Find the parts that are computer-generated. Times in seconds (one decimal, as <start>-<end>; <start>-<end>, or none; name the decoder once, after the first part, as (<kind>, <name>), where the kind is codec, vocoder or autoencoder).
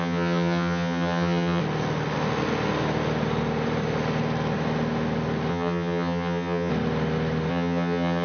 0.0-1.6 (vocoder, HiFi-GAN); 5.5-6.7; 7.5-8.2